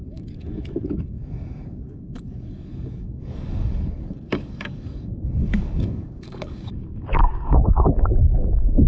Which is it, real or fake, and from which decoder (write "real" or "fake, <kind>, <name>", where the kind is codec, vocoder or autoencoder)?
fake, codec, DAC